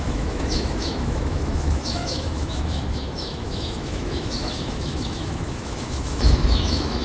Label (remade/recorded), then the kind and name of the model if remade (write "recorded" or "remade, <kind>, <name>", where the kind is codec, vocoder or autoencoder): remade, autoencoder, DAC-VAE